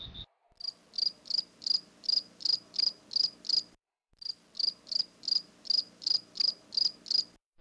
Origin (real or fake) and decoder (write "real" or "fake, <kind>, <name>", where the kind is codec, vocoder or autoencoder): real